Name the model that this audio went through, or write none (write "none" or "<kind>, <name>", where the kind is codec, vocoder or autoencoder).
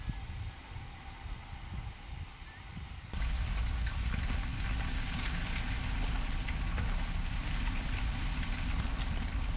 none